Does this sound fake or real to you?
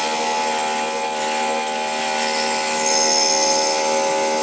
real